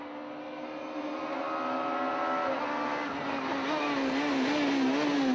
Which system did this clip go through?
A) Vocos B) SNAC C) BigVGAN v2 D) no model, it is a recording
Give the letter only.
D